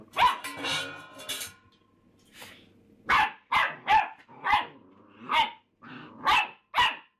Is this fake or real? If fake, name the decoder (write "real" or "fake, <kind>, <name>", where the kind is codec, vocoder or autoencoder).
real